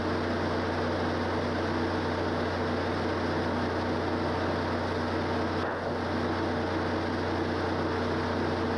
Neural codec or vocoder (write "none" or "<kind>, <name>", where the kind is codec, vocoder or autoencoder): none